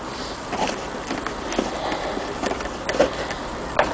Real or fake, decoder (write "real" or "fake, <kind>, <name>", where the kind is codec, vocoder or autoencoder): real